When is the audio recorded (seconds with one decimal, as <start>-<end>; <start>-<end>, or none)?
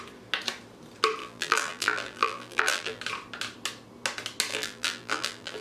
0.0-1.2; 3.0-4.5